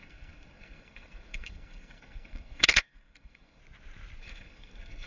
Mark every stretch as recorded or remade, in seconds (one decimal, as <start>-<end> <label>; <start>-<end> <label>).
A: 0.0-3.6 remade; 3.6-4.2 recorded; 4.2-5.1 remade